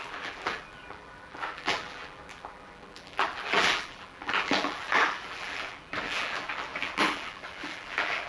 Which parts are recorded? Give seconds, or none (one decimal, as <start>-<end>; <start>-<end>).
none